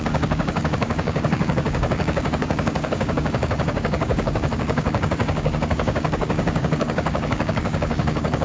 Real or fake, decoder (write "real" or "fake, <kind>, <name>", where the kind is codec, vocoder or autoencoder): fake, codec, DAC